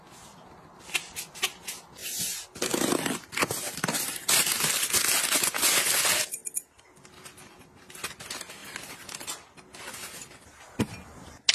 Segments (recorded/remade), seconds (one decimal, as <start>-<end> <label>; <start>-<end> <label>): 0.0-11.5 recorded